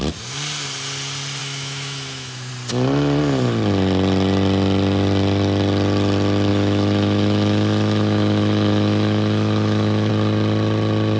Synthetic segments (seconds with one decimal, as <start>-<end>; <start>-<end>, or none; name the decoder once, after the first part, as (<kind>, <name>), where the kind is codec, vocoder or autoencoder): 1.4-2.5 (autoencoder, DAC-VAE); 6.5-10.1

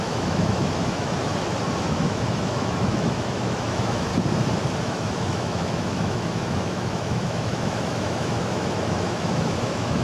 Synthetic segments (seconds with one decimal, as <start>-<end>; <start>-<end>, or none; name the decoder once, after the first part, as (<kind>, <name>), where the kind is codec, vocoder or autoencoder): 0.0-1.3 (autoencoder, DAC-VAE); 1.9-4.1; 4.8-10.0

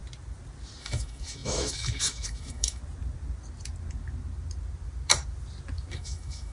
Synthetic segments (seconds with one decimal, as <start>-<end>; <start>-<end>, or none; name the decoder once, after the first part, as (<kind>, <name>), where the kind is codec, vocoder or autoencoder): 0.8-2.8 (autoencoder, DAC-VAE); 5.9-6.5

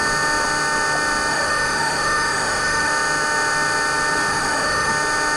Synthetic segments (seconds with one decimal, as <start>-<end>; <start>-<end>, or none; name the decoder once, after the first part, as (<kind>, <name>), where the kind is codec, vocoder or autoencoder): 1.3-2.9 (autoencoder, DAC-VAE); 4.3-4.9

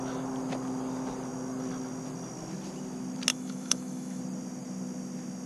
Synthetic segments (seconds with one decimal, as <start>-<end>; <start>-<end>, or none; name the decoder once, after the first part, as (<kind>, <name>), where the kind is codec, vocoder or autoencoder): 3.3-4.2 (autoencoder, DAC-VAE)

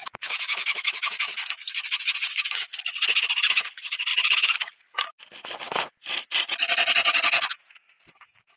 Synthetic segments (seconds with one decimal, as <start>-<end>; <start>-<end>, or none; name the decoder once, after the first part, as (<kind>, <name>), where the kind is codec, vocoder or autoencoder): 0.0-3.3 (autoencoder, DAC-VAE)

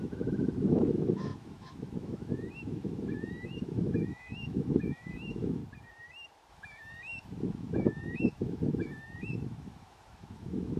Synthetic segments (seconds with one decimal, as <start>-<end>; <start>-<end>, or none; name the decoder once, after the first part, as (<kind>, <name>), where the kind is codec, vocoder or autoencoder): 0.0-5.6 (autoencoder, DAC-VAE); 6.5-10.8